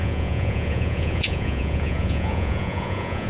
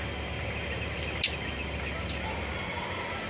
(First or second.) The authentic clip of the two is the second